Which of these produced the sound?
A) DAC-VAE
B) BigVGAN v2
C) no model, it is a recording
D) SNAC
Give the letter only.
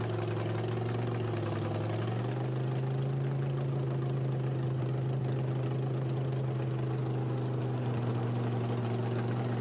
C